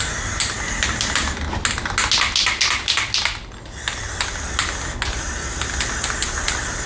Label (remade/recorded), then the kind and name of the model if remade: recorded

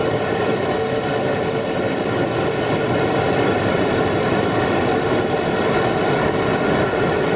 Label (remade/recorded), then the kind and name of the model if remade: recorded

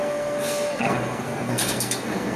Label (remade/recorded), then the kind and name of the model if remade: remade, codec, SNAC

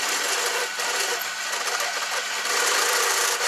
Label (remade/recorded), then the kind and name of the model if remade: recorded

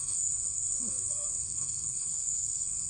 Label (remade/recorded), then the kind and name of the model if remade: remade, codec, SNAC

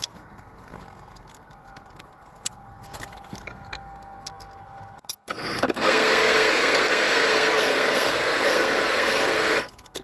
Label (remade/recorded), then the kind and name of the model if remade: remade, codec, SNAC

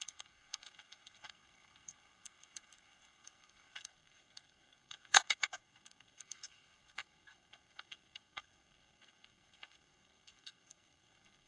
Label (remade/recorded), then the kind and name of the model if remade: remade, codec, SNAC